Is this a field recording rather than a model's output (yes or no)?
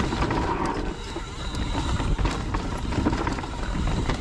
yes